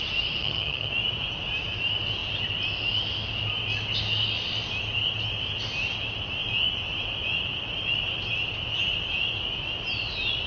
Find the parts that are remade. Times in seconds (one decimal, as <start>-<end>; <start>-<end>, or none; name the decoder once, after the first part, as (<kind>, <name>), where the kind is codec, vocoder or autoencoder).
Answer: 0.4-0.9 (vocoder, HiFi-GAN)